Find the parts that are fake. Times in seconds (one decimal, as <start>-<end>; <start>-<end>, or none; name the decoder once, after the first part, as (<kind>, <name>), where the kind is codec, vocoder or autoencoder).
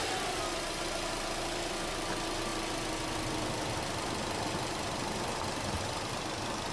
none